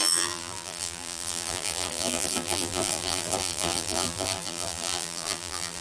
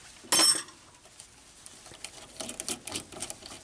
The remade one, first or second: first